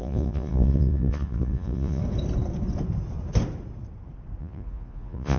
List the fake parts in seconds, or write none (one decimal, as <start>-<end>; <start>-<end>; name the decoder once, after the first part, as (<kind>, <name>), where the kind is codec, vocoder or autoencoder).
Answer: 0.0-2.0 (vocoder, Vocos); 4.4-5.4